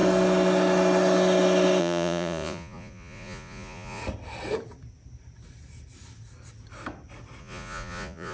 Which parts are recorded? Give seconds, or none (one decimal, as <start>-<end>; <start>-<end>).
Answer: 0.0-1.8; 4.0-7.4